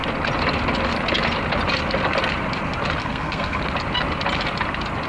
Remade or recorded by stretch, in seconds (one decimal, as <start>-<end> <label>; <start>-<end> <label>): 0.0-3.0 recorded; 3.0-3.6 remade; 3.6-5.1 recorded